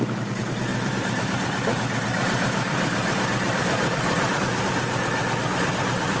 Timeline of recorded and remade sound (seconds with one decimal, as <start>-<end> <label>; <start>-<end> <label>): 0.0-0.7 recorded; 0.7-4.4 remade; 4.4-5.2 recorded; 5.2-6.2 remade